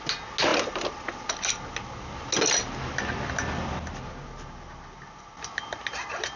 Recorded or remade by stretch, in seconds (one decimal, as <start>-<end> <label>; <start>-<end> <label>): 0.0-6.4 recorded